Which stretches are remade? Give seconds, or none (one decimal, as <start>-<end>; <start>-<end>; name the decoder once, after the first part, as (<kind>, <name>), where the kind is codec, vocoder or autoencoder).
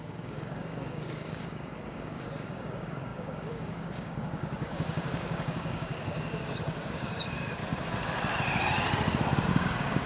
0.0-7.6 (codec, DAC); 9.5-10.1